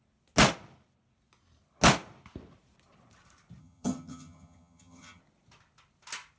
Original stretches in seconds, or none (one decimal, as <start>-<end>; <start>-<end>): 0.0-3.6; 5.2-6.4